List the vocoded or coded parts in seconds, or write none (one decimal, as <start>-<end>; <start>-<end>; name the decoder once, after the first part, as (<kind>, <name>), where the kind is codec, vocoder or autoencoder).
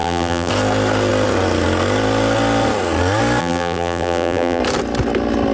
0.0-0.5 (vocoder, BigVGAN v2); 3.4-4.6